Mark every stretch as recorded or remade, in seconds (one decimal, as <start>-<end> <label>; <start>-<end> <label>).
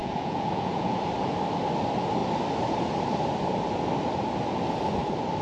0.0-1.0 remade; 1.0-5.4 recorded